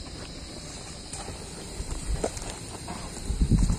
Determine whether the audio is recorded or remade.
recorded